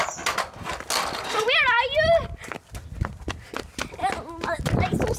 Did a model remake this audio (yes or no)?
no